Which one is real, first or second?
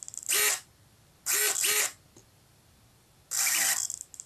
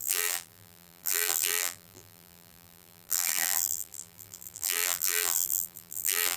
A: first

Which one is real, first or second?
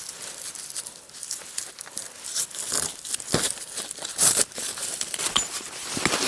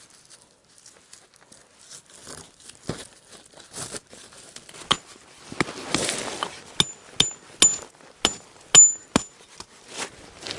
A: second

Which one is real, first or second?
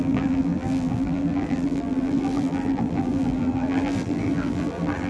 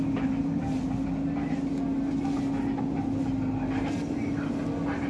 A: second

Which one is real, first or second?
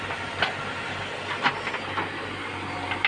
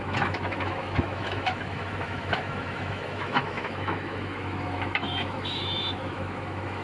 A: first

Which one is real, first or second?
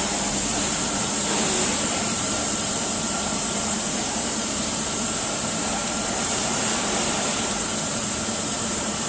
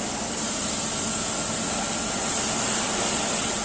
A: second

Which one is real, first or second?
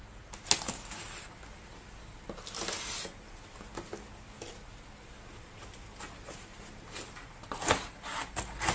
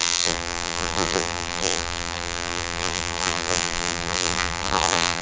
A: first